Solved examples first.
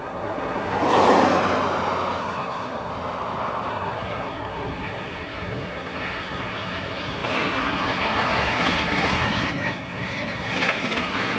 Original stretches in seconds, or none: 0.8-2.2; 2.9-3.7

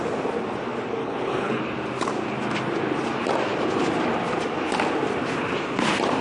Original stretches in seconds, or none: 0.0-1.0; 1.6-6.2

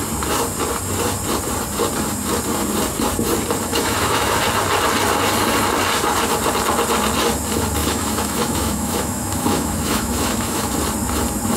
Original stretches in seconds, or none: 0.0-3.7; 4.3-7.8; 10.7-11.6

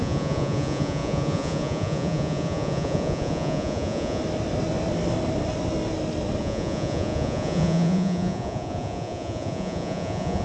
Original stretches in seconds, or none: 4.2-6.4

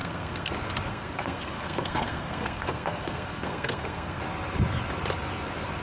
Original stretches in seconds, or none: 0.5-0.9; 4.2-5.8